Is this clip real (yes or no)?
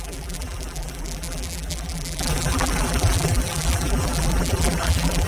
no